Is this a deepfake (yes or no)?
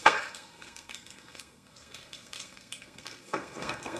yes